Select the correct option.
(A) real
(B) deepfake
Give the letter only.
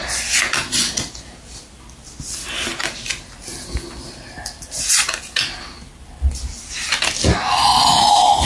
A